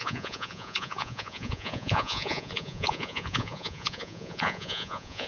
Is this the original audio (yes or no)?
no